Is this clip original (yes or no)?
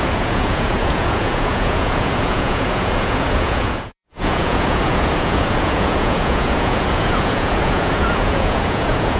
no